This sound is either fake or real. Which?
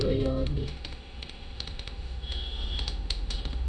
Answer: fake